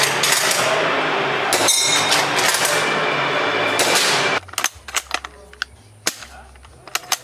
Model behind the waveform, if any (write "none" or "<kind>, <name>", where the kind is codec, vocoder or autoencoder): none